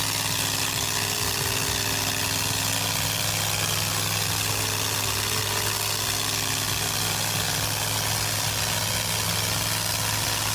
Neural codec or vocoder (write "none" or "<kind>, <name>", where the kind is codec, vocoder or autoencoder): none